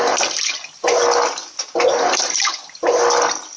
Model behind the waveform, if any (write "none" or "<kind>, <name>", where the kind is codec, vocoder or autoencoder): none